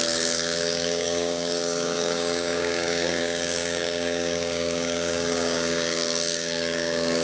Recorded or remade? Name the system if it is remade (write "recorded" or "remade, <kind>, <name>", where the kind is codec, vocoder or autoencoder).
remade, codec, DAC